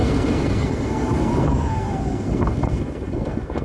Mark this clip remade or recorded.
remade